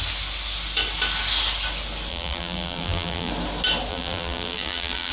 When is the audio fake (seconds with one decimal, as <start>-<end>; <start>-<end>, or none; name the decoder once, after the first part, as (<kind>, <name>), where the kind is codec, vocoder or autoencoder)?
2.1-3.3 (vocoder, BigVGAN v2); 3.9-5.1